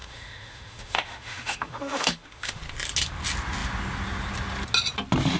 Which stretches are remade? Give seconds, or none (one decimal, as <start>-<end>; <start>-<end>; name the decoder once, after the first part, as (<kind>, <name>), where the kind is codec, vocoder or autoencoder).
0.0-2.6 (autoencoder, DAC-VAE)